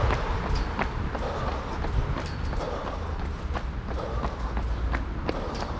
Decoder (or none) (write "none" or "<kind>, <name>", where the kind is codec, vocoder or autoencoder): none